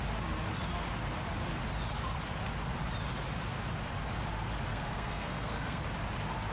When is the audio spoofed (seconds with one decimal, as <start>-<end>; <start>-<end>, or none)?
4.7-5.8